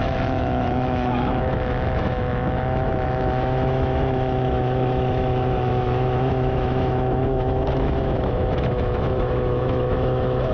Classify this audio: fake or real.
fake